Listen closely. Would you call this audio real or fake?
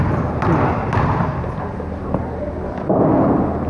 real